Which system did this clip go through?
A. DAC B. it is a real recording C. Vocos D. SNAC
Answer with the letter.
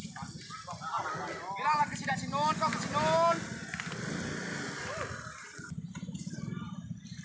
B